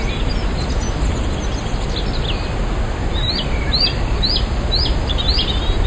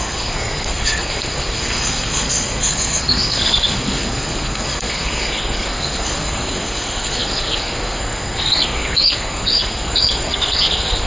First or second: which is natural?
first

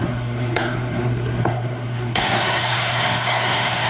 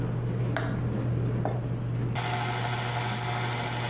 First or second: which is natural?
second